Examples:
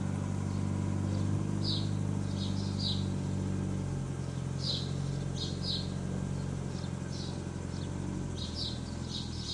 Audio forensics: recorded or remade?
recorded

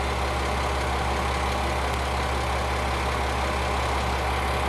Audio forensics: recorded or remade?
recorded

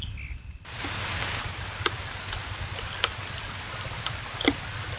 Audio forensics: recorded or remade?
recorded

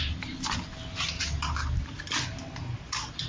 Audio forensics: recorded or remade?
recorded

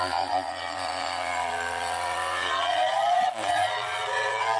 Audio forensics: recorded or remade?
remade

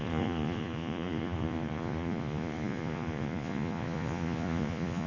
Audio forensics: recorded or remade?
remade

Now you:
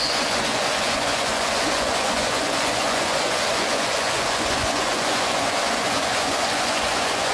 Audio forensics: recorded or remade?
remade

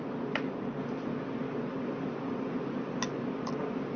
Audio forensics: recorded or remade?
recorded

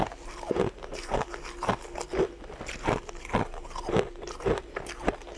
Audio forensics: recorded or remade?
recorded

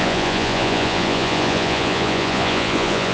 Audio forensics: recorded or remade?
remade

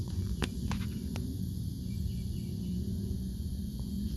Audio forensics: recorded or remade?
remade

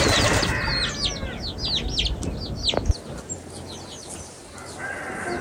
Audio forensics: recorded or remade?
recorded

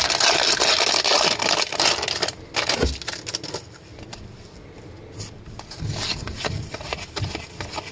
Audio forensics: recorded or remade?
recorded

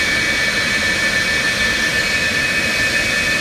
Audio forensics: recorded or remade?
recorded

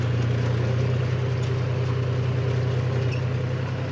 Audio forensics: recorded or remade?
recorded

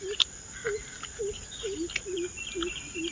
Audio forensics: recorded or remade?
recorded